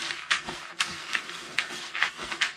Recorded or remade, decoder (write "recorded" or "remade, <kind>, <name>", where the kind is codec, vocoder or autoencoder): remade, codec, SNAC